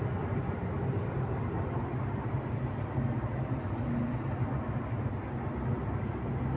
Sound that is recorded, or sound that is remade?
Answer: recorded